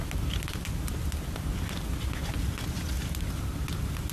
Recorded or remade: recorded